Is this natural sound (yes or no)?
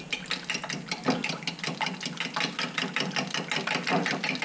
yes